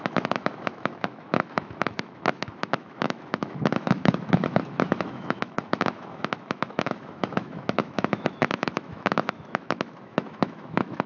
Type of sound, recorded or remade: remade